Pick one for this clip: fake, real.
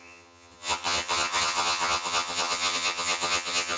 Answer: fake